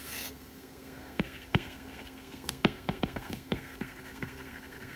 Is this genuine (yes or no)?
no